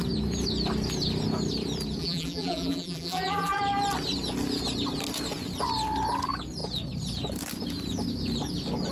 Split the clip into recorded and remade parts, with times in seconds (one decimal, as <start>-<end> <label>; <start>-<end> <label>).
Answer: 0.0-2.0 recorded; 2.0-3.6 remade; 3.6-8.9 recorded

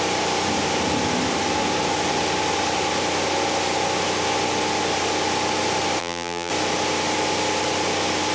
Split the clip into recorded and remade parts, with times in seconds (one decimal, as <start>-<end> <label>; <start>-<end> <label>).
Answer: 0.0-6.0 recorded; 6.0-6.5 remade; 6.5-8.3 recorded

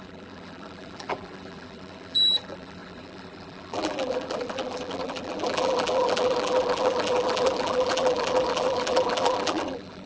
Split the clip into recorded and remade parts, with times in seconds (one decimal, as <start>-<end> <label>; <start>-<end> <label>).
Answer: 0.0-10.1 remade